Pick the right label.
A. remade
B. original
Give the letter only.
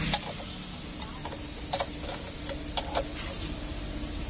B